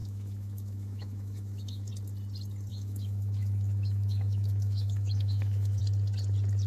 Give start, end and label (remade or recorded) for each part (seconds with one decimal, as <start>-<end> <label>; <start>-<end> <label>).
0.0-1.9 remade; 1.9-2.7 recorded; 2.7-5.8 remade; 5.8-6.7 recorded